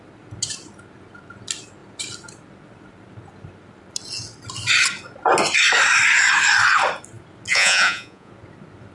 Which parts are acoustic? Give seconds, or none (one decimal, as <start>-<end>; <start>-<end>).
0.0-7.5; 8.3-8.9